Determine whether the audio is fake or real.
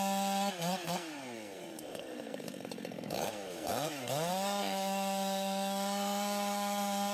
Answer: fake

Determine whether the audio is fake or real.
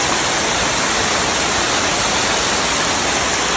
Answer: real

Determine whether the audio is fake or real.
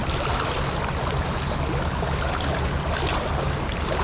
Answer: real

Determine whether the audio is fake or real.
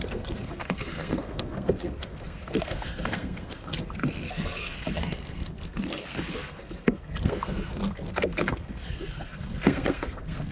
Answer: fake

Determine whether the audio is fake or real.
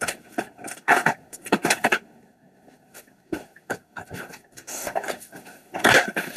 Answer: fake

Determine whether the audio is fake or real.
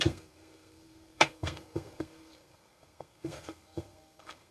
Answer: fake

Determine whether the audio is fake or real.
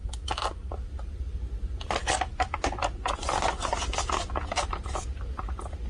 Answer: real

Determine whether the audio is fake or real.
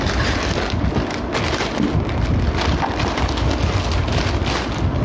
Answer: real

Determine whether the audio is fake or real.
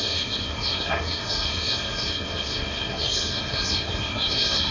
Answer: fake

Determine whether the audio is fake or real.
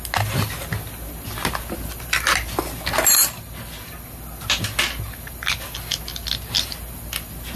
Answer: real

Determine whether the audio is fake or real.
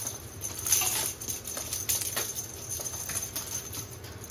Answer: real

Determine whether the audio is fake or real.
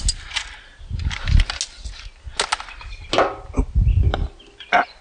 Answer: real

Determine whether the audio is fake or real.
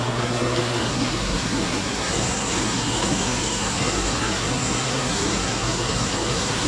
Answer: fake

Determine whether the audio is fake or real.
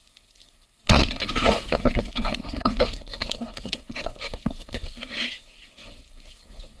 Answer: fake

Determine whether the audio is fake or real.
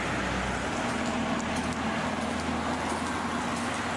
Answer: real